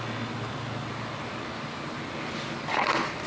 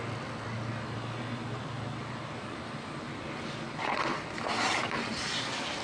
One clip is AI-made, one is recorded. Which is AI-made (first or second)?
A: second